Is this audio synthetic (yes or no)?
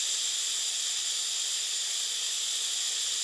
no